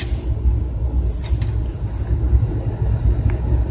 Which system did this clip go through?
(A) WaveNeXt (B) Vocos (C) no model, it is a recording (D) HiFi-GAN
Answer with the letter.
C